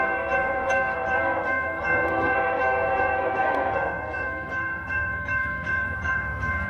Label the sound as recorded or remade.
remade